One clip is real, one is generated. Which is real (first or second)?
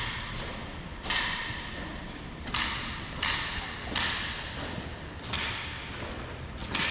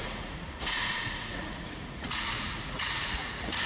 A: first